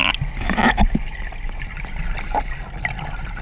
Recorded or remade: recorded